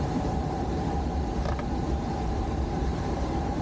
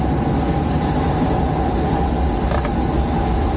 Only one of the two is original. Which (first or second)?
second